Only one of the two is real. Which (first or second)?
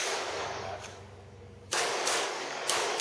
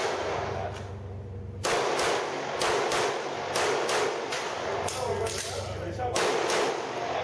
second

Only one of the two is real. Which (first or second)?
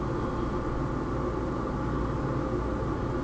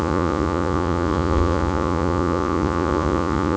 first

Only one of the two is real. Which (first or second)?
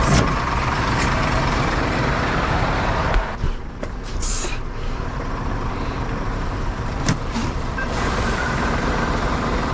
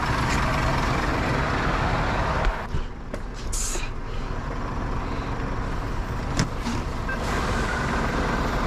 second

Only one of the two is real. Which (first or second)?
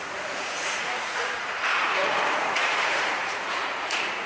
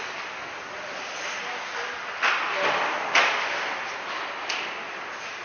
second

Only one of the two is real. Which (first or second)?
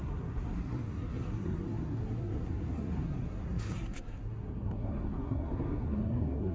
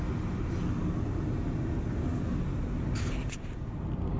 second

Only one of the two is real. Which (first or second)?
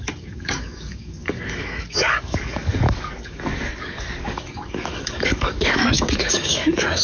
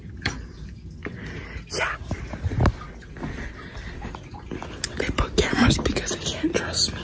second